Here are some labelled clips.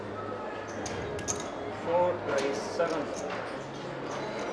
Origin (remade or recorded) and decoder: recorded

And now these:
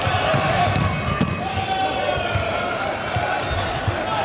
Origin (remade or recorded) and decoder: recorded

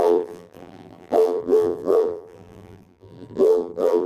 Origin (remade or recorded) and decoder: remade, vocoder, BigVGAN v2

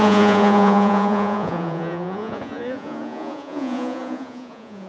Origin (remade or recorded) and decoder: remade, vocoder, Vocos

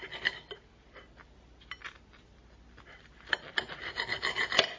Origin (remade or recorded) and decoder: recorded